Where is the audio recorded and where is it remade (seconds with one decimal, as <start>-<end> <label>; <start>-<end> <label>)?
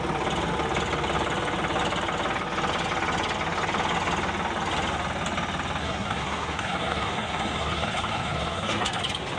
0.0-5.8 recorded; 5.8-9.0 remade; 9.0-9.4 recorded